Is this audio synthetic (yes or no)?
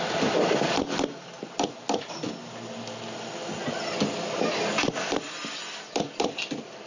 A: no